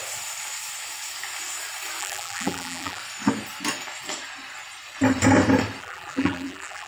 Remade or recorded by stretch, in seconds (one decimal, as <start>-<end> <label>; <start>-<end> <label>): 0.0-2.0 recorded; 2.0-3.0 remade; 3.0-5.8 recorded; 5.8-6.9 remade